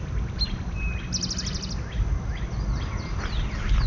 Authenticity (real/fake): real